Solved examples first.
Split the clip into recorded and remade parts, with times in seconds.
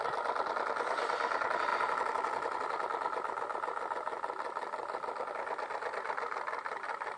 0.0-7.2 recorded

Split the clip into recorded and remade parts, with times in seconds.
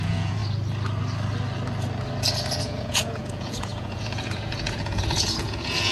0.0-0.4 remade; 0.4-2.6 recorded; 2.6-5.9 remade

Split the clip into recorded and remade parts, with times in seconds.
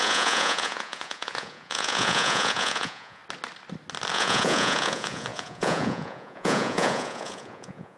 0.0-3.2 remade; 3.2-4.1 recorded; 4.1-8.0 remade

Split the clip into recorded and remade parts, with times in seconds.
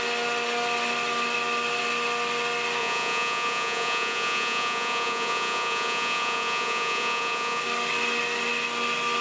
0.0-2.8 recorded; 2.8-7.6 remade; 7.6-9.2 recorded